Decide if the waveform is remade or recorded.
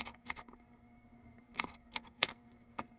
remade